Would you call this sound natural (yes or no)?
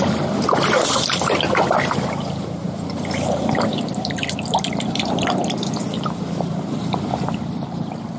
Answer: no